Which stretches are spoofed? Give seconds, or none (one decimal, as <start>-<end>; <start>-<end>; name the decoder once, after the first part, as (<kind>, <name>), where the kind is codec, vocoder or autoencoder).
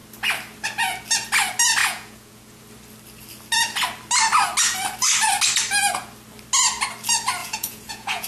1.8-2.6 (vocoder, Vocos); 7.4-8.3